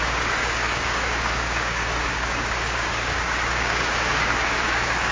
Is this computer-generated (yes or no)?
yes